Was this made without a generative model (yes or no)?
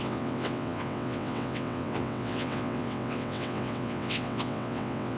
no